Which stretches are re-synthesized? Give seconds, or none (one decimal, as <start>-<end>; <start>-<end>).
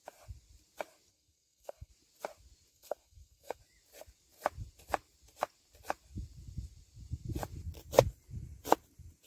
1.1-1.9; 2.7-3.6